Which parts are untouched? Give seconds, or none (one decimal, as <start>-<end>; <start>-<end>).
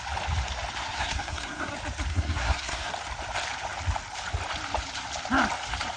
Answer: 0.0-0.8; 1.7-2.1; 2.9-6.0